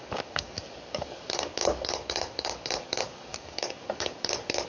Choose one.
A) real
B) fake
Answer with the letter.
B